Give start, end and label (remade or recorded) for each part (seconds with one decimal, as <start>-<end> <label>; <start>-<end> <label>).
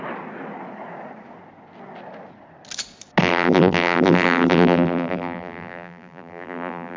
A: 0.0-3.2 recorded; 3.2-7.0 remade